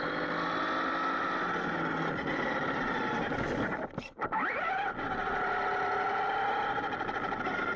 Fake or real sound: real